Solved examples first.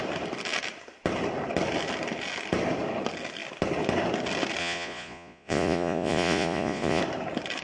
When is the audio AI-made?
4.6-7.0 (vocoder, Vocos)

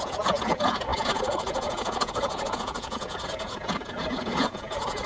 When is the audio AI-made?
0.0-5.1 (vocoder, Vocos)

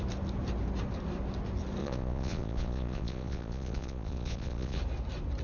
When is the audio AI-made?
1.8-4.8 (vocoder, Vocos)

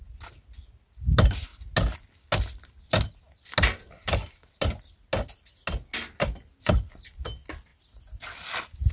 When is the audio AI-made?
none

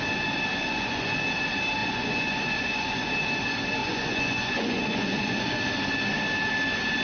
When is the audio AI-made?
0.5-1.2 (vocoder, Vocos); 1.8-3.1; 3.8-5.6